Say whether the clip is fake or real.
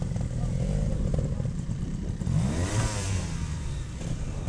fake